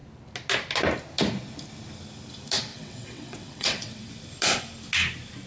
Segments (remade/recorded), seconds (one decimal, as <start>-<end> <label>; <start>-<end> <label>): 0.0-2.7 recorded; 2.7-4.1 remade; 4.1-5.5 recorded